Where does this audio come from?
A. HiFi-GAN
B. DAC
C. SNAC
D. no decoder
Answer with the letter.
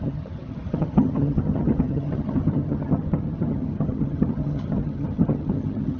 A